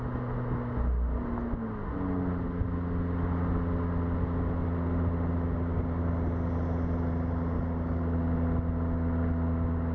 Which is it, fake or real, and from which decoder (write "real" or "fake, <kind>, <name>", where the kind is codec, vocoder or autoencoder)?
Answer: real